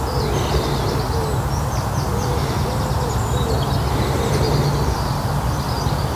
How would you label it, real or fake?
real